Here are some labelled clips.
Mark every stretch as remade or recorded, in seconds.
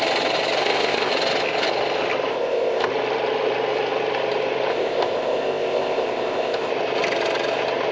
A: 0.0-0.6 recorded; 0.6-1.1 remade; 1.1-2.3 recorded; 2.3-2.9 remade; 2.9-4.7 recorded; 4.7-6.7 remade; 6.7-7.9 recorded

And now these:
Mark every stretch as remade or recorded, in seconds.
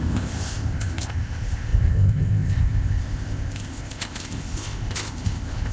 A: 0.0-5.7 remade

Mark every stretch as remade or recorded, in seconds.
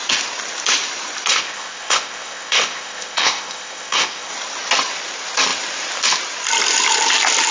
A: 0.0-1.3 recorded; 1.3-4.3 remade; 4.3-7.5 recorded